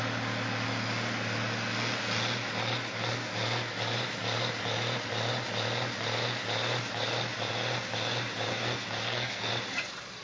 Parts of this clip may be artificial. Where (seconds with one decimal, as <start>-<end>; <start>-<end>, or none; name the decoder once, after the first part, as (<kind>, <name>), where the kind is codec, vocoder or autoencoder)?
8.5-9.5 (codec, SNAC)